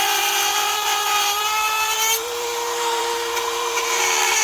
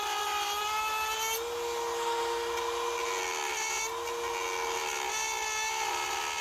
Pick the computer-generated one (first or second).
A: first